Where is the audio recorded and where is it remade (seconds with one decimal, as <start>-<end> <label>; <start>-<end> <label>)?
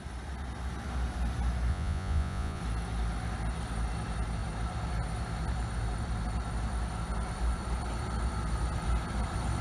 0.0-1.7 recorded; 1.7-2.6 remade; 2.6-9.6 recorded